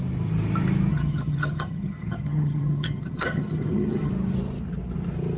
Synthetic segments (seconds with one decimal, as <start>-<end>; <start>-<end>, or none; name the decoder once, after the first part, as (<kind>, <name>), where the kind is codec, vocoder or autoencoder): 0.9-4.1 (vocoder, HiFi-GAN)